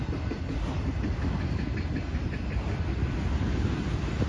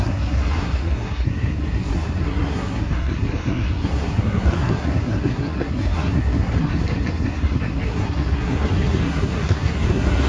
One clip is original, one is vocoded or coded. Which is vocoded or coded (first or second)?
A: second